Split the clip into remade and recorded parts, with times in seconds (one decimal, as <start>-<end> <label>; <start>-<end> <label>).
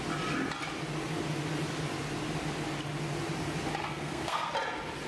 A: 0.0-3.8 recorded; 3.8-4.5 remade; 4.5-5.1 recorded